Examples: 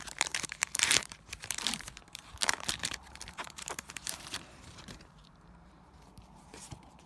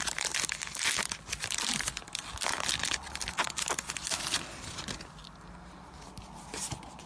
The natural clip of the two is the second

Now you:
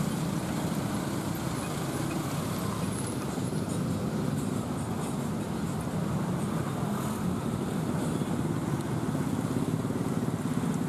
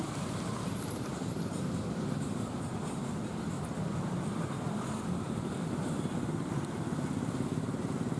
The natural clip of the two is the first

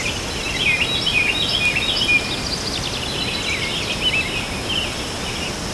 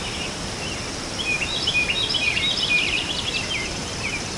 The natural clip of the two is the first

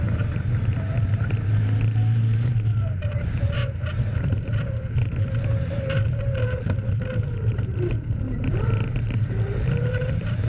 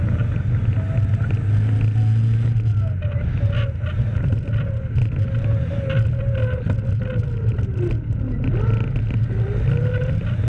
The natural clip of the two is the second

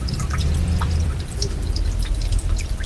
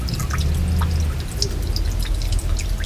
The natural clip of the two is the second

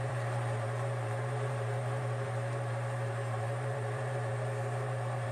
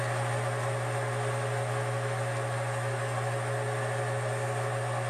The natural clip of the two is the second